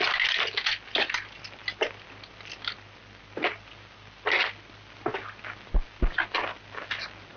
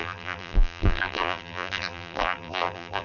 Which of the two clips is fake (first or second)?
second